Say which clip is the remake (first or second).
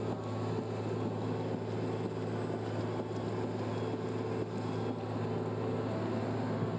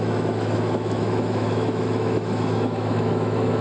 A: second